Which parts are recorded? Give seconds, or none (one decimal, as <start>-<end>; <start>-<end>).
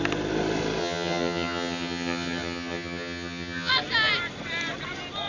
0.0-0.8; 3.7-5.3